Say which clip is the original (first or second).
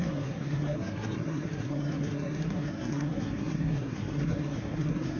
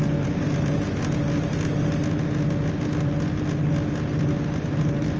second